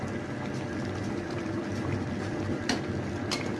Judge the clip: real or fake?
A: real